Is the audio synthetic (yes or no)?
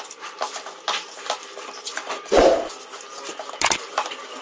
no